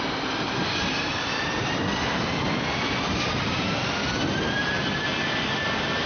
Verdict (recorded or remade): recorded